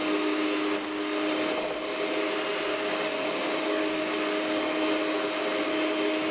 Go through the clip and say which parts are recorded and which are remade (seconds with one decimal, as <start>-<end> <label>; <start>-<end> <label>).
0.0-2.7 recorded; 2.7-4.2 remade; 4.2-6.3 recorded